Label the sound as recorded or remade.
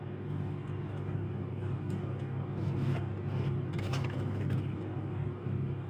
remade